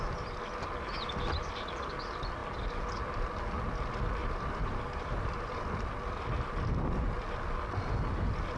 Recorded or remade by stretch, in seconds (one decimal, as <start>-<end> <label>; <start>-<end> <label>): 0.0-4.2 recorded; 4.2-5.6 remade; 5.6-8.6 recorded